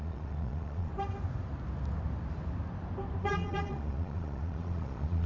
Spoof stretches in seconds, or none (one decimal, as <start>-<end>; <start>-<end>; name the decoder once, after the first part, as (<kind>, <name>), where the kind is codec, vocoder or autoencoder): 0.0-0.9 (vocoder, Vocos); 3.2-5.3